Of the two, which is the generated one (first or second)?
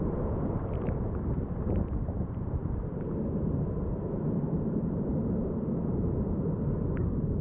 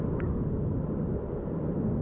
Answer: first